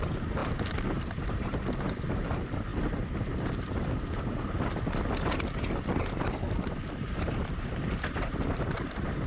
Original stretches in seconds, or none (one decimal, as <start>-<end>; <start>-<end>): 2.7-6.5